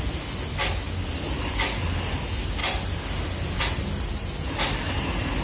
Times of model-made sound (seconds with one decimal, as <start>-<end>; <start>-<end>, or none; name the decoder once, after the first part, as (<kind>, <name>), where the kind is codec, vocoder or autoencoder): none